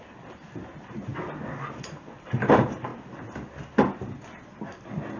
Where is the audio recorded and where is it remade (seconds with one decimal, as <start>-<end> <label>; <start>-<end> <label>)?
0.0-5.2 recorded